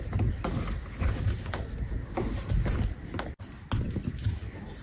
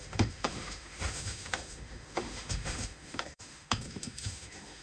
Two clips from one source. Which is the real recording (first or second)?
first